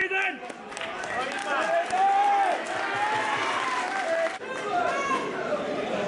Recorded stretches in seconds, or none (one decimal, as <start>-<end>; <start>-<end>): 0.0-0.6; 1.4-5.1